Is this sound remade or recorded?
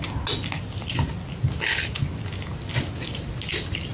recorded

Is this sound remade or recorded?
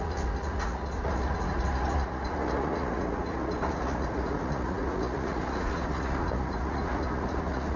remade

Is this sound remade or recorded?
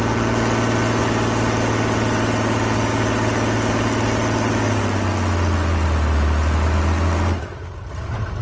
recorded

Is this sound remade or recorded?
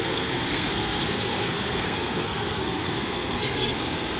remade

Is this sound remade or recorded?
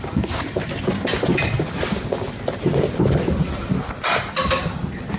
recorded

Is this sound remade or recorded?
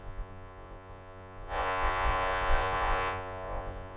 remade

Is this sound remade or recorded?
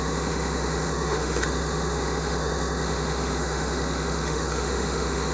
remade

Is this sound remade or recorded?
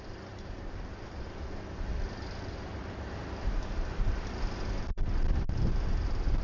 recorded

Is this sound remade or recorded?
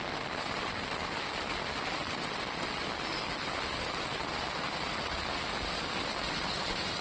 recorded